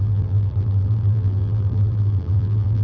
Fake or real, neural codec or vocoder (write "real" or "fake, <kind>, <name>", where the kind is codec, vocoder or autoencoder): fake, vocoder, BigVGAN v2